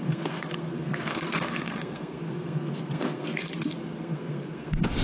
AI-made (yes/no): yes